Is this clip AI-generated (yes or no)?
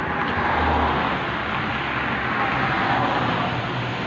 no